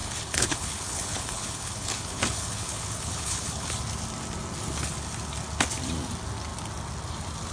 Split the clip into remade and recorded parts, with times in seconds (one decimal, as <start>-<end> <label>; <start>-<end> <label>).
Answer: 0.0-3.7 remade; 3.7-7.5 recorded